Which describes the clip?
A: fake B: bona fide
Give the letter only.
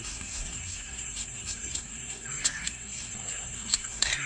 A